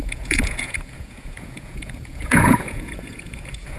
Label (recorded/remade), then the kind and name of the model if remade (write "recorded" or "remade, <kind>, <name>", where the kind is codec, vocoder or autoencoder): remade, vocoder, Vocos